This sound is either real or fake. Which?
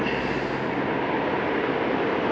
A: real